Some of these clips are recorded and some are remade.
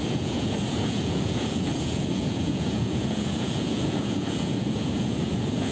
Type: remade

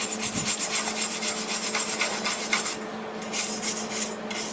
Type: recorded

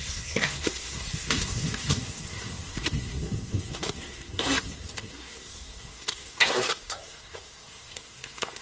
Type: remade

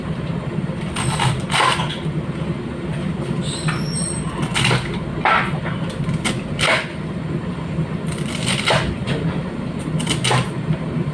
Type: recorded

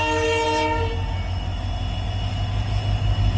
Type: recorded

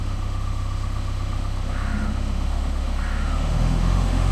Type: remade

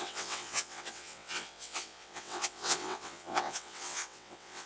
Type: remade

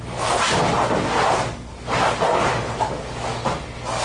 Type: recorded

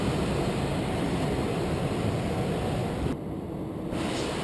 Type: recorded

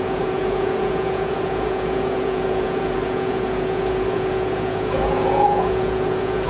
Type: remade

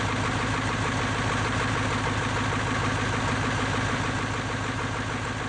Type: recorded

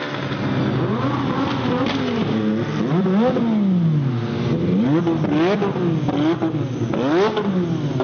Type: recorded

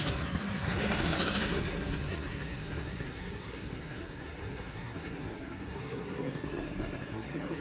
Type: remade